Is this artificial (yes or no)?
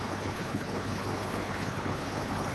yes